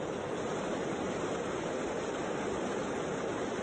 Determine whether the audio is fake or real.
real